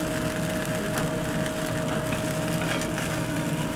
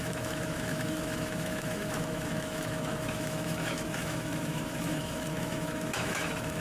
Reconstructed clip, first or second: second